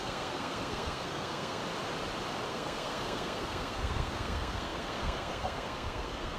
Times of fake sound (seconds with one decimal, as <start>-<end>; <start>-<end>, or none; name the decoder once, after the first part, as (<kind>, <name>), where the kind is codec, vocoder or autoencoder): 0.0-1.6 (codec, SNAC); 2.5-6.4